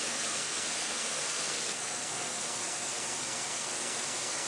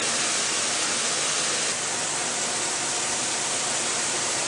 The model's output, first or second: first